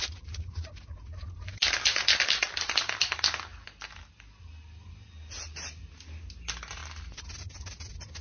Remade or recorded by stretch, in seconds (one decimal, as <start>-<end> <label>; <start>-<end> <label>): 0.0-8.2 recorded